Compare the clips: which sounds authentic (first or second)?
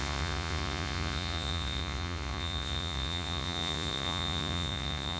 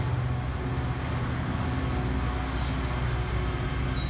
second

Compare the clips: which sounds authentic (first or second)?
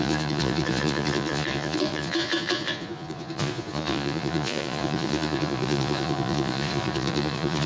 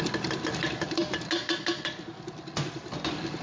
second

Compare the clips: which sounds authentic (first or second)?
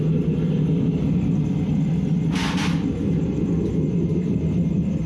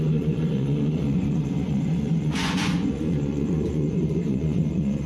first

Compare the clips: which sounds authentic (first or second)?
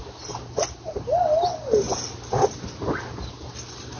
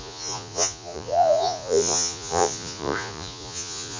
first